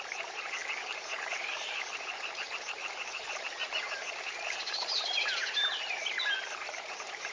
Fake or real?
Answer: fake